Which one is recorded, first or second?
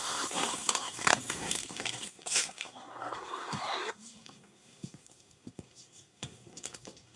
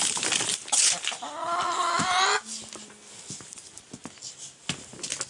second